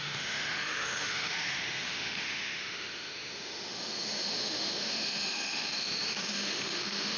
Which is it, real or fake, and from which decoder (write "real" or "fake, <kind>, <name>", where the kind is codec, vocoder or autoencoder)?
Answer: fake, autoencoder, DAC-VAE